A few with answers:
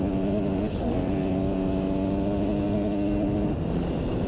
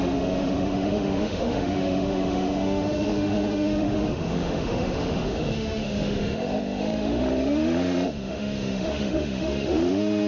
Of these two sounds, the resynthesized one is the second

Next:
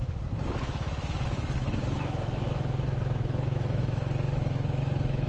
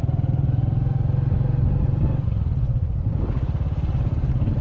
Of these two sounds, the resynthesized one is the first